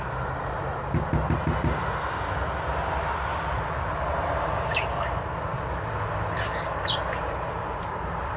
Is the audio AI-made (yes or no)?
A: no